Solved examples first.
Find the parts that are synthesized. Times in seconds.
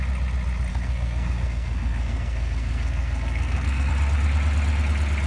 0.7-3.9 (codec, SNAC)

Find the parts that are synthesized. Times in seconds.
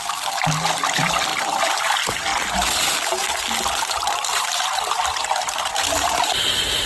0.0-1.3 (vocoder, BigVGAN v2); 1.8-6.9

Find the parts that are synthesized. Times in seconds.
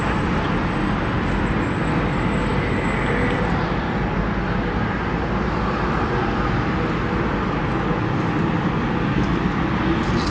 none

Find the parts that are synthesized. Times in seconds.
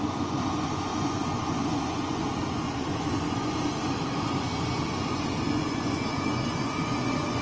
0.0-7.4 (vocoder, Vocos)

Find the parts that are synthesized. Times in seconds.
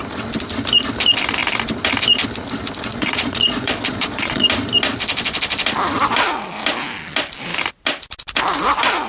2.9-4.5 (vocoder, Vocos)